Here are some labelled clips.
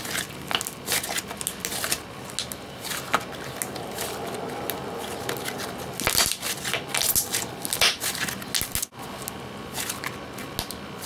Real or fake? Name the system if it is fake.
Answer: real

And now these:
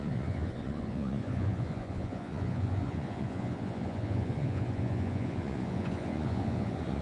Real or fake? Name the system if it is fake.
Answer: fake, vocoder, Vocos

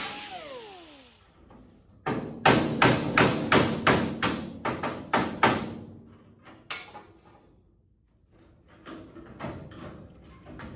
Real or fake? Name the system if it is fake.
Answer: real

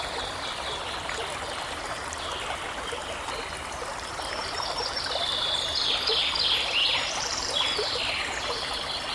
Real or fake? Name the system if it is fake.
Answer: real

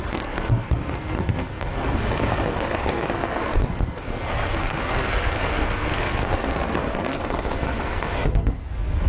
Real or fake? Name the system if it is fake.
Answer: fake, codec, SNAC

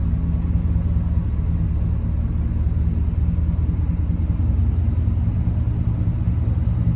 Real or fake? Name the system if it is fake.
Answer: real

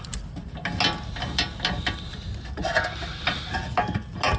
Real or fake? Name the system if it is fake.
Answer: real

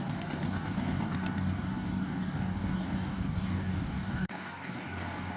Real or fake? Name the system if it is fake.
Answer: fake, codec, DAC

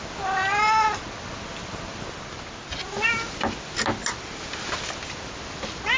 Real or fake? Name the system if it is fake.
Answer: real